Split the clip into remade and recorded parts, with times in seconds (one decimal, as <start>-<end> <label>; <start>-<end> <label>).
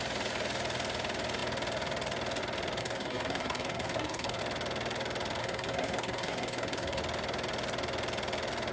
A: 0.0-2.8 recorded; 2.8-4.4 remade; 4.4-5.4 recorded; 5.4-7.0 remade; 7.0-8.7 recorded